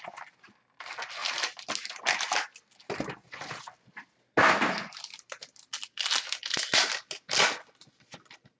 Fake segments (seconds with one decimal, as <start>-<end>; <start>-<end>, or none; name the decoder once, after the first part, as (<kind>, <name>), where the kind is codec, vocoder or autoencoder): none

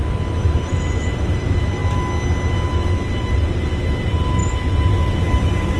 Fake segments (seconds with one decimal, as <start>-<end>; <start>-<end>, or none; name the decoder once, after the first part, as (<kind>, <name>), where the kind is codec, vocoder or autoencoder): 0.0-1.8 (vocoder, BigVGAN v2); 3.2-4.4; 5.1-5.8

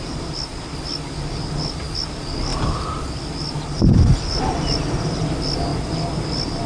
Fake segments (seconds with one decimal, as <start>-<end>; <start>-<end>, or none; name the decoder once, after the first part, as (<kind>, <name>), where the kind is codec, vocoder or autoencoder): none

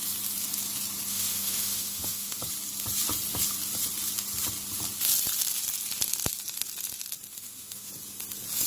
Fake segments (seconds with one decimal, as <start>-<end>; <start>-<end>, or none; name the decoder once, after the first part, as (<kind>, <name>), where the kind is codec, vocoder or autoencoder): 1.1-2.4 (autoencoder, DAC-VAE); 7.3-7.9

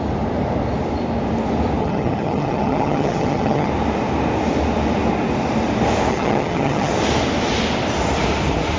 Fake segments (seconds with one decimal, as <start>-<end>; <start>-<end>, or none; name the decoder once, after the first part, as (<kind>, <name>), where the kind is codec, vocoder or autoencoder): 1.8-3.7 (vocoder, HiFi-GAN); 6.1-6.9